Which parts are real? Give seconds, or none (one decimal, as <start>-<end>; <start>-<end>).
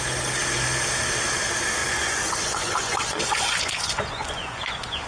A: 0.0-1.8